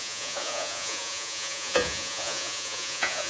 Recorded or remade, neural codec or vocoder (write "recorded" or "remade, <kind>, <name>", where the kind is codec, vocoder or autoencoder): remade, vocoder, Vocos